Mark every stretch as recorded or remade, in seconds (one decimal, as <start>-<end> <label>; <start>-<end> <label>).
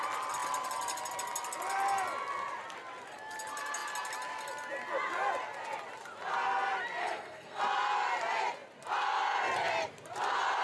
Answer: 0.0-7.0 recorded; 7.0-7.6 remade; 7.6-10.6 recorded